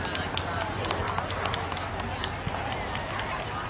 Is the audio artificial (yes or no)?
no